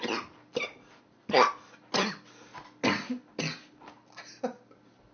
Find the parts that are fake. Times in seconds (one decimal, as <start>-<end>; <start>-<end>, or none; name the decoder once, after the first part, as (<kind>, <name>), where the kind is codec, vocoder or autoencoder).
none